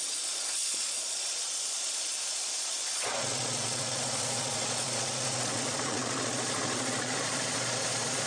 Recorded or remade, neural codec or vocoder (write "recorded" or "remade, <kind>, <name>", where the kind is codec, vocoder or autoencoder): remade, vocoder, Vocos